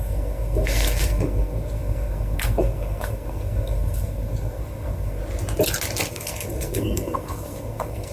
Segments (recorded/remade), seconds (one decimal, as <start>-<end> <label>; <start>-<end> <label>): 0.0-5.2 remade; 5.2-6.1 recorded; 6.1-8.1 remade